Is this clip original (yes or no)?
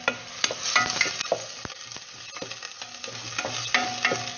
yes